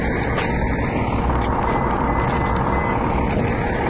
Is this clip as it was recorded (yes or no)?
yes